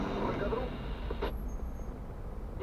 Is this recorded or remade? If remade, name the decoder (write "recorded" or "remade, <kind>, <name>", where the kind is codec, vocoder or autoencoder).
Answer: recorded